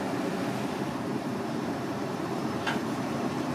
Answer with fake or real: fake